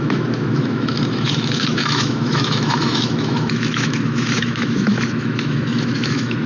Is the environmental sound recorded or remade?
remade